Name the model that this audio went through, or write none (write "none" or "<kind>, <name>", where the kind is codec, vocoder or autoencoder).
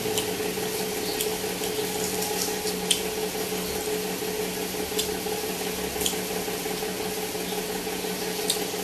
none